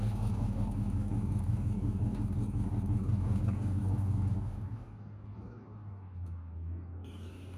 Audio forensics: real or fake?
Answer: fake